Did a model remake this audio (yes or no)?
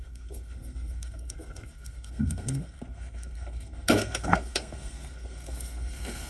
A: yes